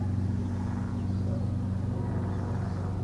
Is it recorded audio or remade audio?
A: recorded